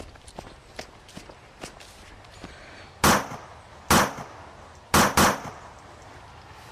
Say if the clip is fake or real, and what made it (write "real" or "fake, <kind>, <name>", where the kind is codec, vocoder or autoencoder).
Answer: real